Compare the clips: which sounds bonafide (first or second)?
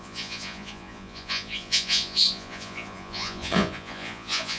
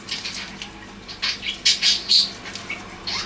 second